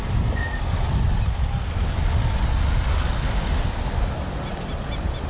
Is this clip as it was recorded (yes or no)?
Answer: yes